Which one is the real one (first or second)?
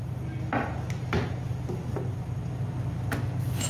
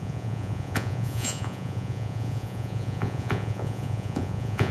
first